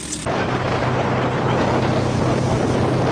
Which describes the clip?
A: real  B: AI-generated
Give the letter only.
A